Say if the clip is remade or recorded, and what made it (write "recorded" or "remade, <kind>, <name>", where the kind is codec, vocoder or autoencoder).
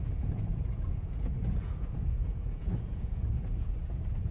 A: remade, vocoder, Vocos